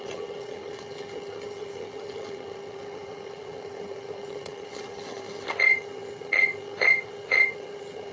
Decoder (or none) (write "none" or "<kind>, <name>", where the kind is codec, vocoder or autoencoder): vocoder, HiFi-GAN